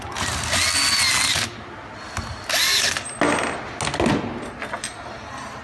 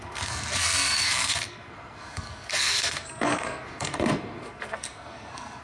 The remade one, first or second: second